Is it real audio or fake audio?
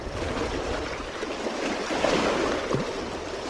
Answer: real